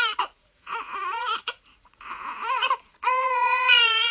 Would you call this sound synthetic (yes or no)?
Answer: yes